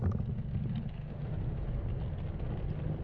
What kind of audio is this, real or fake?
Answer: real